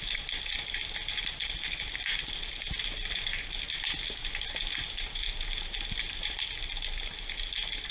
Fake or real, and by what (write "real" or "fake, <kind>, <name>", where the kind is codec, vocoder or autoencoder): real